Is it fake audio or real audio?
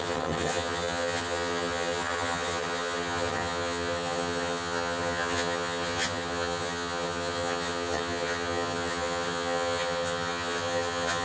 fake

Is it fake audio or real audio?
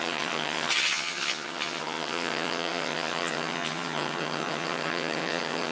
fake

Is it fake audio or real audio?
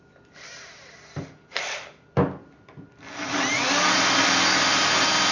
real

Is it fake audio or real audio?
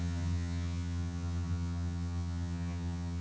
fake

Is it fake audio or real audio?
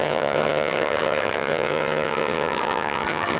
fake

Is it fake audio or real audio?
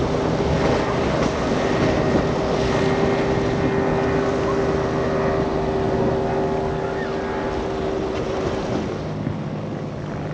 real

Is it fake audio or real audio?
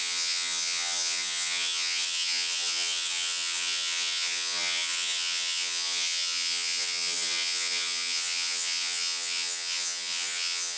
fake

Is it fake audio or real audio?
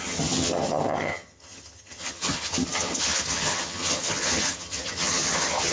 fake